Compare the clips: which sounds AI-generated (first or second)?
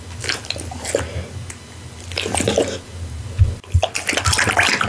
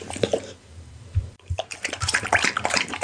second